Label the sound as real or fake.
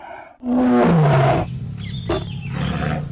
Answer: real